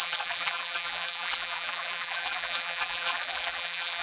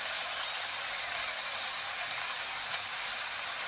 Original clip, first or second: second